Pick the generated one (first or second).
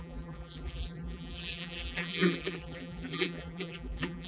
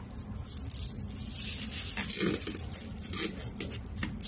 first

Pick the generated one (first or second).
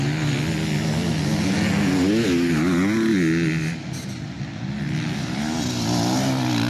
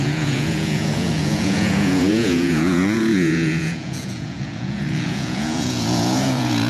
second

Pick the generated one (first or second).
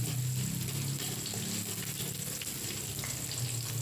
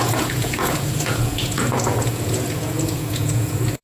second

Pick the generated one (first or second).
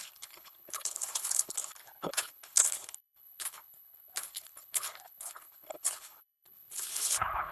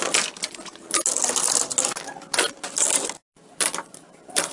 first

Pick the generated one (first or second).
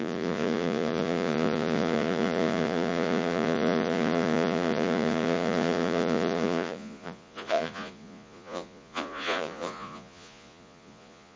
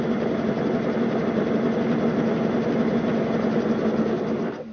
first